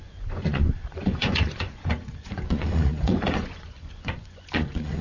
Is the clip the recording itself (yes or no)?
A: no